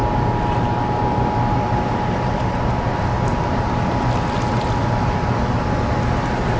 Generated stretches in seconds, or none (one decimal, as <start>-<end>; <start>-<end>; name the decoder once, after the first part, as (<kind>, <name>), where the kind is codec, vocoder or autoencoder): none